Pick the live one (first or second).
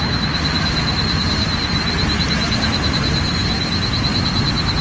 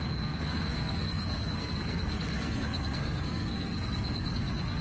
first